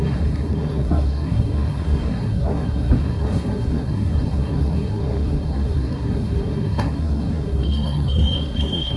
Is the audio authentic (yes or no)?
no